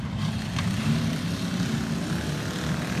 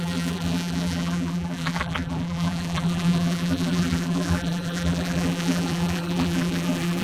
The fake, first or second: second